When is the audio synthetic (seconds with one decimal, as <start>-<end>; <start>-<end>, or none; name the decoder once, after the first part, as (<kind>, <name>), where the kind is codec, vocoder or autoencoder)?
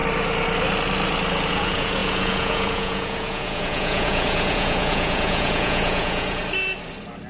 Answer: 1.5-6.4 (vocoder, Vocos)